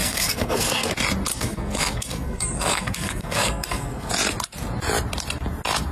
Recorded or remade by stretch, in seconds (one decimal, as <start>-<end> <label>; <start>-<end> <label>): 0.0-0.9 remade; 0.9-1.3 recorded; 1.3-4.1 remade; 4.1-5.9 recorded